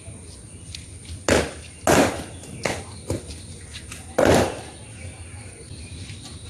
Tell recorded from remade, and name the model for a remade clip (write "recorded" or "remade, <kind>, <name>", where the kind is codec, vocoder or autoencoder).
recorded